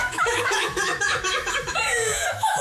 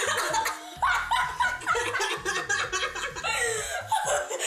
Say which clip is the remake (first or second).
first